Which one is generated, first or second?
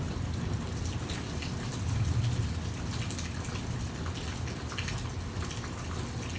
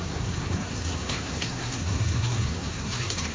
second